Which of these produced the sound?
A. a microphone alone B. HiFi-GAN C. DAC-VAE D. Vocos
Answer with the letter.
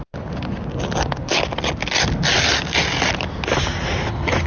A